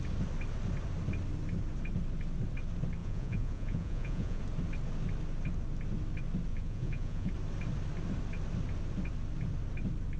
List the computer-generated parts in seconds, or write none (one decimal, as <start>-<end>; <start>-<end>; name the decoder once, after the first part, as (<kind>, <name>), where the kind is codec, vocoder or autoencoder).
3.0-4.4 (vocoder, Vocos); 6.5-7.3